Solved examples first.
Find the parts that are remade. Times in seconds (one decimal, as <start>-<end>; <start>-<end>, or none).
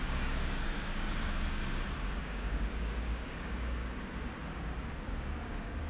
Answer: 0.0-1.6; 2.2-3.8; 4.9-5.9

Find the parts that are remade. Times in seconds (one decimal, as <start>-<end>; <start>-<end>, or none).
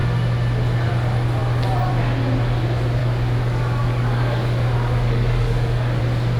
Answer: 3.0-6.0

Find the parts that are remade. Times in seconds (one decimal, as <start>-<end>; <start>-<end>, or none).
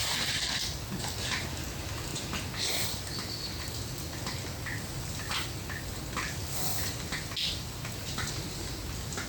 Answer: none